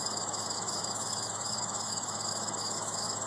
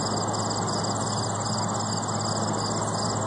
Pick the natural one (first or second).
second